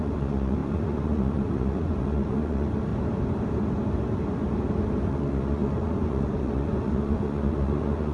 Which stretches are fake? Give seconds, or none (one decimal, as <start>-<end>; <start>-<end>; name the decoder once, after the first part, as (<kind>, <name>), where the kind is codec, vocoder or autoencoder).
0.0-2.9 (vocoder, Vocos); 5.1-8.1